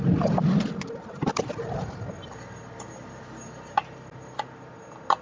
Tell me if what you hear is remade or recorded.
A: recorded